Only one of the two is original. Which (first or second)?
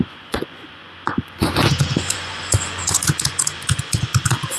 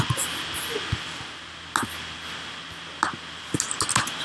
second